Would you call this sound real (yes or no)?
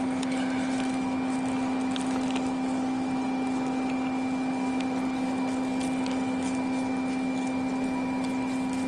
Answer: yes